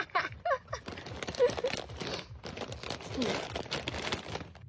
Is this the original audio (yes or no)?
yes